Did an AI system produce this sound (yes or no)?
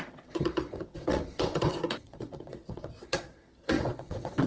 yes